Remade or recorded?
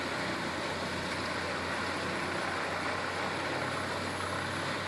recorded